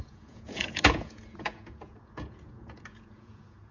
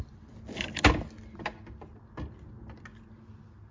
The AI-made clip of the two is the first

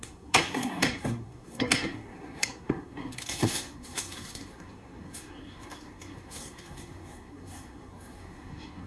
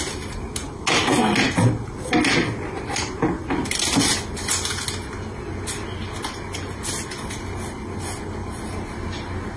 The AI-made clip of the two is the first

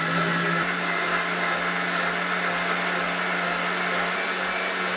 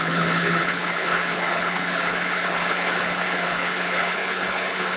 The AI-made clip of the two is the second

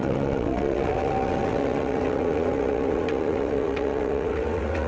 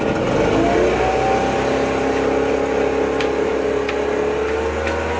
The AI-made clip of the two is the first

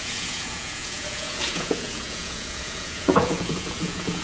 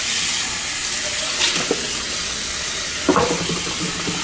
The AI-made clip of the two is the first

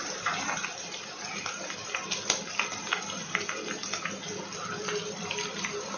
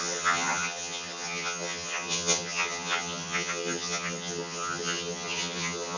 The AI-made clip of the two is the second